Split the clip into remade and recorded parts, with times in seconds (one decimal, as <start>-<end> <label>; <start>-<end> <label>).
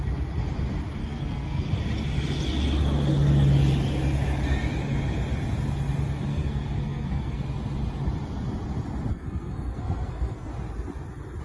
0.0-1.0 recorded; 1.0-1.7 remade; 1.7-6.3 recorded; 6.3-7.4 remade; 7.4-9.1 recorded; 9.1-10.5 remade; 10.5-11.4 recorded